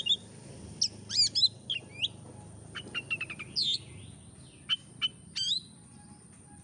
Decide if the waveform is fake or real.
real